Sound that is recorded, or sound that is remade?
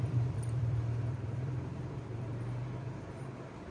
remade